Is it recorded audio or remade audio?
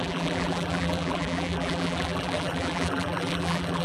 remade